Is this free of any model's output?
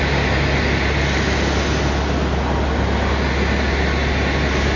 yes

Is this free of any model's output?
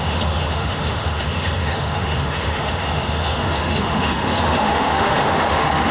no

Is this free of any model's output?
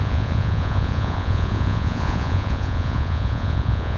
no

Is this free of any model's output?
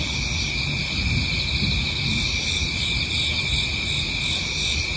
yes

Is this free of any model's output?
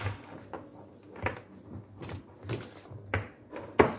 yes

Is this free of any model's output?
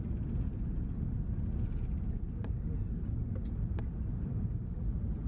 yes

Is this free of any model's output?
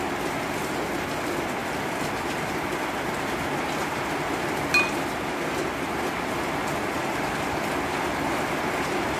yes